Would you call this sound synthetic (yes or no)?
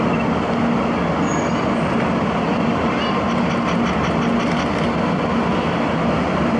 no